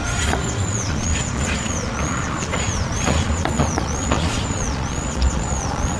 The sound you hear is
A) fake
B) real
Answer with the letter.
A